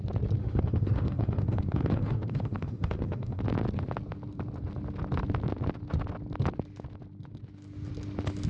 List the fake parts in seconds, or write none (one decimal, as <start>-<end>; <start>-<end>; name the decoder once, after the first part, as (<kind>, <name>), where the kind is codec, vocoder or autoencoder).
0.4-3.4 (autoencoder, DAC-VAE)